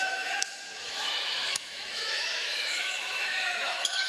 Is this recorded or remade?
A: remade